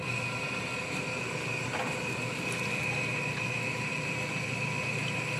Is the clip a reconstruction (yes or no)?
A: no